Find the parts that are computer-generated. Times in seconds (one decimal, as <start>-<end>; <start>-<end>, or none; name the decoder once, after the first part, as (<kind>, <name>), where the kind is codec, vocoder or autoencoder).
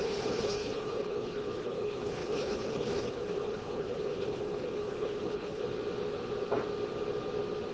0.0-5.6 (codec, HILCodec)